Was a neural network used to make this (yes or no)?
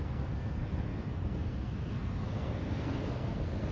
yes